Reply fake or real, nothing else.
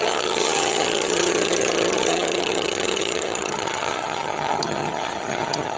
fake